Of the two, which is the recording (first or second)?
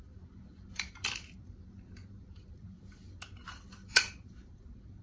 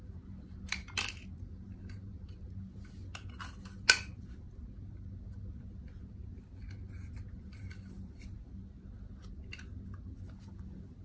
second